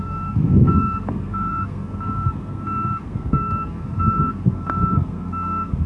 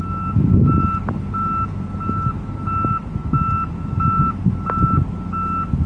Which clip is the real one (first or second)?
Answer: second